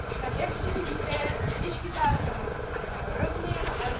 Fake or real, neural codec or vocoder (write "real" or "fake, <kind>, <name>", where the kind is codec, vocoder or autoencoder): fake, vocoder, Vocos